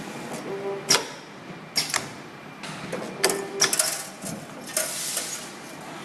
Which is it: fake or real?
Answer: real